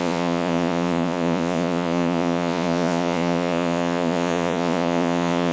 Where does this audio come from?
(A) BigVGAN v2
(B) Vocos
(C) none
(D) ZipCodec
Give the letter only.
B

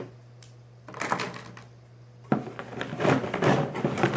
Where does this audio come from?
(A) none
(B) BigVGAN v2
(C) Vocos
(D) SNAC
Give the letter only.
A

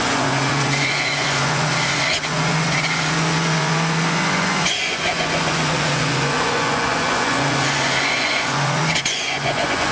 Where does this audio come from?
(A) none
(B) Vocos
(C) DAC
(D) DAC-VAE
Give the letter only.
B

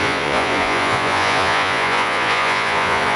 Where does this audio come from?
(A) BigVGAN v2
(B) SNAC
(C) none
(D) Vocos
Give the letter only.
D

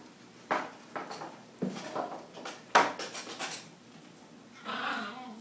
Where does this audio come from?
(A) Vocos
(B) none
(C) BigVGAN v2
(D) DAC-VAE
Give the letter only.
B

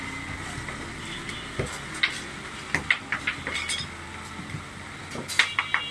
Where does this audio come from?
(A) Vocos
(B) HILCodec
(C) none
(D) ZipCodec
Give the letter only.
C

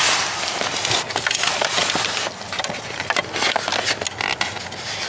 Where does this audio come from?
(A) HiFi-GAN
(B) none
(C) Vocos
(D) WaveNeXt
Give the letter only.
B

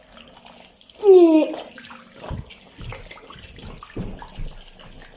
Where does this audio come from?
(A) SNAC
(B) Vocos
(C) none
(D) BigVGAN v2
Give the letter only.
C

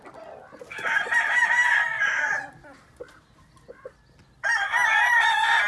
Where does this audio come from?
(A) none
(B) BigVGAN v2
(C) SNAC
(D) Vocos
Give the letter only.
A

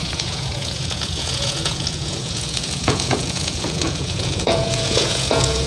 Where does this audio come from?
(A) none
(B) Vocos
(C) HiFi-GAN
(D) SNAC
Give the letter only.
B